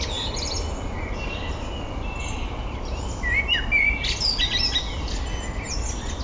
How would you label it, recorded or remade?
recorded